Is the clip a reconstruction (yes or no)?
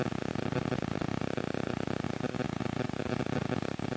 no